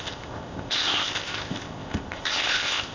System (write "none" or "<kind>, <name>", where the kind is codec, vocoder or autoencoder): codec, ZipCodec